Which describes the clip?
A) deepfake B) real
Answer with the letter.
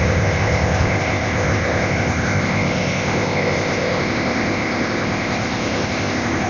A